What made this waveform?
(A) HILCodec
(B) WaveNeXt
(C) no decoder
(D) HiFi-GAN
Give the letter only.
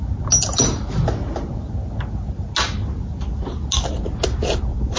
C